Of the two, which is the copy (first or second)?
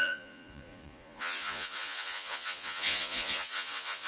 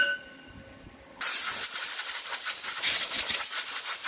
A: first